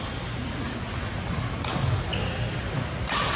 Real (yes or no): yes